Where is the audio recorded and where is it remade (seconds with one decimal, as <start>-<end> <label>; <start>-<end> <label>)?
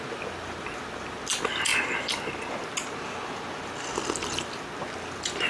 0.0-5.5 recorded